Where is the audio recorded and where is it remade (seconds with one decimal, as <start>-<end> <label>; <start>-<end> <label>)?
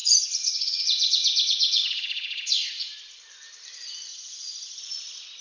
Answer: 0.0-3.2 remade; 3.2-4.1 recorded; 4.1-4.8 remade; 4.8-5.4 recorded